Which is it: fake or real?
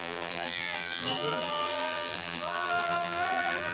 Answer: fake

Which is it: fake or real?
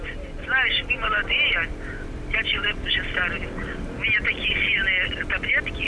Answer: real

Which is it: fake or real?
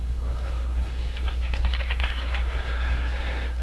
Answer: fake